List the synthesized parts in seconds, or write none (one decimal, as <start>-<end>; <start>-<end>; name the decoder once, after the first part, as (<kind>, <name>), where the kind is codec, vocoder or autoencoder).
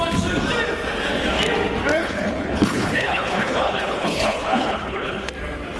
2.0-5.3 (codec, HILCodec)